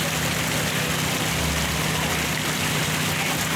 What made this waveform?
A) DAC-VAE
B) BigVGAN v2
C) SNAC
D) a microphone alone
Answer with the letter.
D